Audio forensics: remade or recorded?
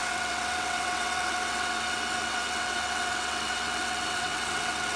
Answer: remade